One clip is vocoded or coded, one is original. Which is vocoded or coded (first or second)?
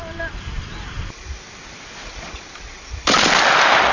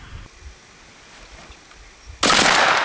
first